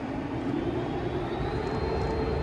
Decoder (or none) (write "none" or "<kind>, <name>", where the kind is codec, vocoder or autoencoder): none